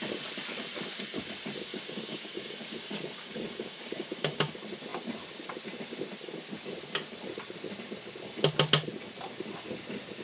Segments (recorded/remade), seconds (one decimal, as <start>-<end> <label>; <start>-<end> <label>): 0.0-1.7 recorded; 1.7-4.5 remade; 4.5-10.2 recorded